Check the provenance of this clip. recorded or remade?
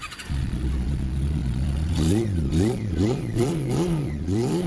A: remade